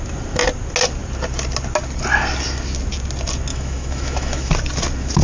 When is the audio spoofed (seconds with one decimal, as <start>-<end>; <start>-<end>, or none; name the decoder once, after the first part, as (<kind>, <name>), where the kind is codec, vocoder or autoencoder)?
3.5-4.5 (autoencoder, DAC-VAE)